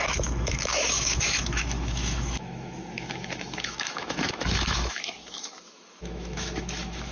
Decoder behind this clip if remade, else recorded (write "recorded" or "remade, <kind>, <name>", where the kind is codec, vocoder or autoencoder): remade, autoencoder, DAC-VAE